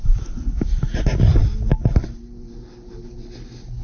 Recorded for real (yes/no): yes